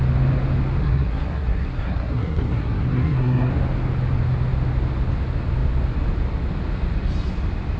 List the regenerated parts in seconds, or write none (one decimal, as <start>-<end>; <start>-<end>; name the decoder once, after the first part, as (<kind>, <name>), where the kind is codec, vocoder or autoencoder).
0.8-3.5 (codec, SNAC)